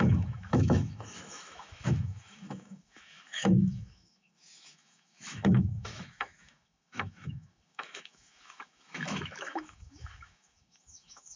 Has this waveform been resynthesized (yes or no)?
yes